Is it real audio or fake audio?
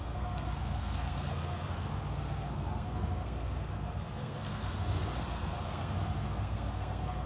fake